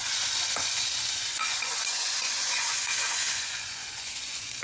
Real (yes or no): no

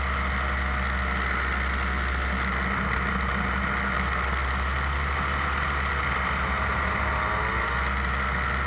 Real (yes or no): yes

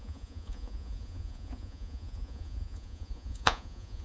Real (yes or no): no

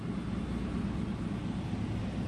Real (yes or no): yes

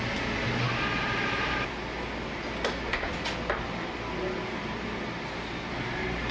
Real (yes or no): yes